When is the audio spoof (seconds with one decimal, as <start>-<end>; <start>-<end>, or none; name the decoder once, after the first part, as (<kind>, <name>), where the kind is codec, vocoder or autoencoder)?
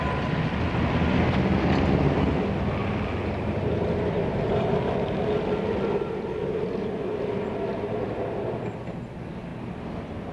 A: 2.8-5.2 (vocoder, BigVGAN v2)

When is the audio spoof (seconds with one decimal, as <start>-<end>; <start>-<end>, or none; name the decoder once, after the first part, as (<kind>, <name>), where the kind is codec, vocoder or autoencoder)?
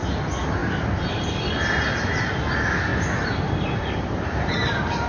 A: 2.9-5.1 (vocoder, BigVGAN v2)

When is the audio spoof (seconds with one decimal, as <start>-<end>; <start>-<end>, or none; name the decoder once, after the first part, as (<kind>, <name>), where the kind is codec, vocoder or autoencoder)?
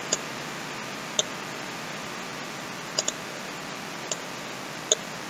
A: none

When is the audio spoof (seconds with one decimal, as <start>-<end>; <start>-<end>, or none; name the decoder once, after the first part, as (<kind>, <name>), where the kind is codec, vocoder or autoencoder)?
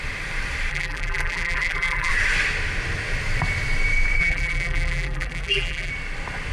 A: 0.7-2.1 (vocoder, BigVGAN v2); 4.2-5.9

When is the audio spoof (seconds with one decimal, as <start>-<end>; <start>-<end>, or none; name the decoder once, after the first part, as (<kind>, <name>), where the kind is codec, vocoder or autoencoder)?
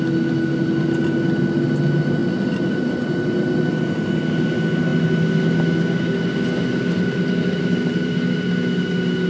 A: none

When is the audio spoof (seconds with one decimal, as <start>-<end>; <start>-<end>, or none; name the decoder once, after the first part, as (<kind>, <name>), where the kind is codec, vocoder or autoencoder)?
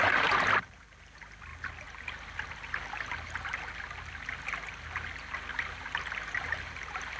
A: none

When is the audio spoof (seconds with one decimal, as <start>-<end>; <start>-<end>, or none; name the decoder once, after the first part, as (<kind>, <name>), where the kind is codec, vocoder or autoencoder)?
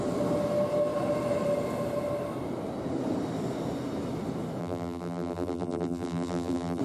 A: 4.6-6.8 (vocoder, BigVGAN v2)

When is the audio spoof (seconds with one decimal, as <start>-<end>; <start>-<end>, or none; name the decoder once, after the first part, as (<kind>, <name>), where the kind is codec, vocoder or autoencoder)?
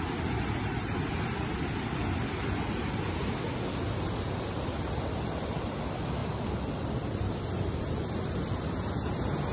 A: 6.2-8.7 (vocoder, BigVGAN v2)